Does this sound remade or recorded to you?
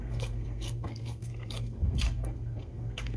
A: remade